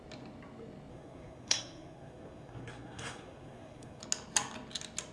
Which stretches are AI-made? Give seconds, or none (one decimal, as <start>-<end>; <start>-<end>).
0.9-4.0